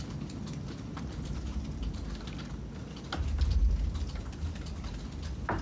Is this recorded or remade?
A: recorded